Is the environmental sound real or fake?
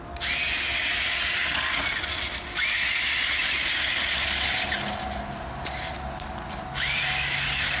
real